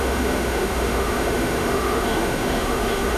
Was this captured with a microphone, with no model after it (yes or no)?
no